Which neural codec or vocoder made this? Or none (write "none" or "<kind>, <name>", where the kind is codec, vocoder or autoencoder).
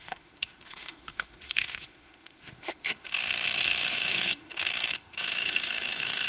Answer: autoencoder, DAC-VAE